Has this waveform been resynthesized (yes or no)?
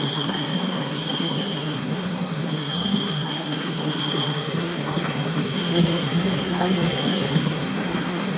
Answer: yes